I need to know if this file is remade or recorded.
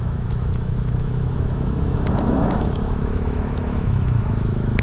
remade